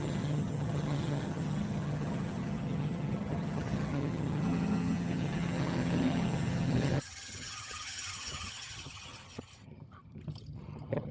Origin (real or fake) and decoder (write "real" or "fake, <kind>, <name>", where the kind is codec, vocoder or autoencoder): fake, vocoder, HiFi-GAN